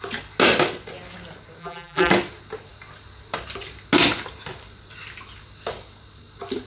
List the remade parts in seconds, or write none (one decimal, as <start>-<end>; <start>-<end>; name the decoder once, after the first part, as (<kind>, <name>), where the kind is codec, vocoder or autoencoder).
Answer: 1.6-2.1 (vocoder, BigVGAN v2)